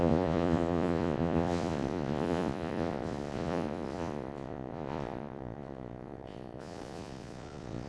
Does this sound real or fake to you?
fake